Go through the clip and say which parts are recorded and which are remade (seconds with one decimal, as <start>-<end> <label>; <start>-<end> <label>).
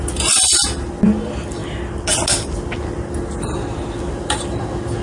0.0-5.0 recorded